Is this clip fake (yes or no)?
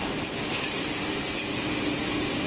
no